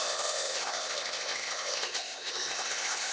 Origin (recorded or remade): remade